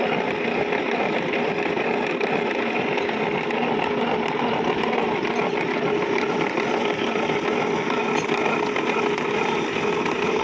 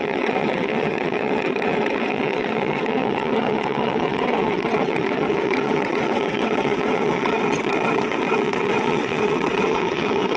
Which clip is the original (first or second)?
first